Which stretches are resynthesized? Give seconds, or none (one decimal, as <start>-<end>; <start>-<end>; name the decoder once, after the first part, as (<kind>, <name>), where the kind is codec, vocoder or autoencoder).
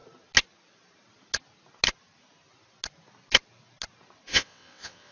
4.3-5.1 (vocoder, WaveNeXt)